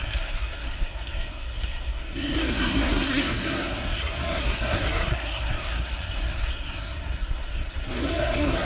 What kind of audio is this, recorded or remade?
remade